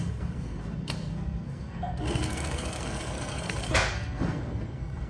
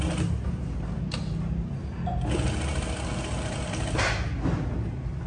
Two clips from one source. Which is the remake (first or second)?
first